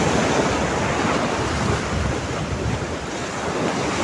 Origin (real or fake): real